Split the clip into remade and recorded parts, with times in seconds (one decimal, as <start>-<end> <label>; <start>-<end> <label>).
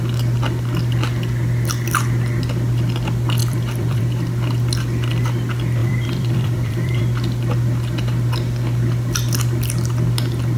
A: 0.0-3.4 recorded; 3.4-4.0 remade; 4.0-5.8 recorded; 5.8-7.0 remade; 7.0-10.6 recorded